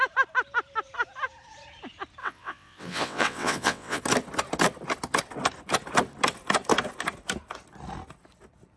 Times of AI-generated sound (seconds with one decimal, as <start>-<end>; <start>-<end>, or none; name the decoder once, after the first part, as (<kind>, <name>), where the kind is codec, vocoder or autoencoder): 2.2-4.0 (vocoder, WaveNeXt)